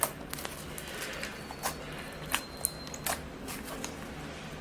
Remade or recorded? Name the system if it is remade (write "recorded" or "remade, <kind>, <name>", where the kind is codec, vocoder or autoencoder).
recorded